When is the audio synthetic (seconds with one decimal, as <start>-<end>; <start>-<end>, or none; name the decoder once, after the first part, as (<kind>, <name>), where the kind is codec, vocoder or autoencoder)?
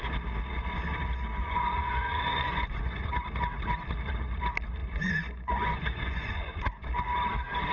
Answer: 1.4-3.1 (vocoder, Vocos); 4.8-6.9